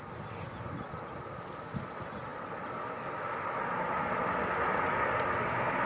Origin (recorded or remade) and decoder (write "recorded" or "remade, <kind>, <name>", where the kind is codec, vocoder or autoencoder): recorded